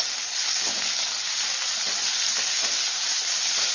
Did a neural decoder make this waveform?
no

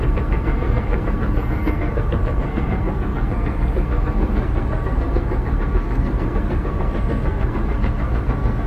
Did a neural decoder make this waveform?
yes